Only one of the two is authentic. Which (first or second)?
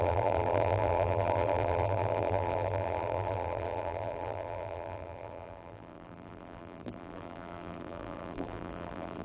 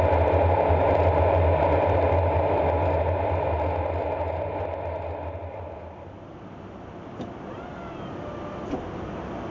second